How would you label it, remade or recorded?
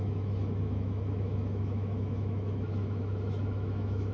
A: remade